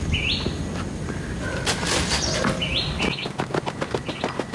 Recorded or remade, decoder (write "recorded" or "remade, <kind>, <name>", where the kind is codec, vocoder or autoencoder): recorded